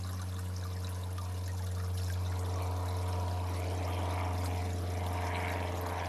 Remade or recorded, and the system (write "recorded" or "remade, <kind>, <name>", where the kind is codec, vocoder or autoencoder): recorded